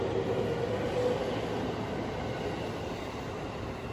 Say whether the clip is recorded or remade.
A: recorded